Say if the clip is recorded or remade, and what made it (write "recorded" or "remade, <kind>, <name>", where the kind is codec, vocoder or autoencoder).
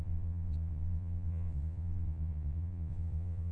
remade, vocoder, Vocos